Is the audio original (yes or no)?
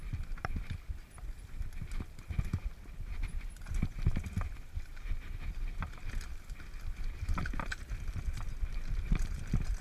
yes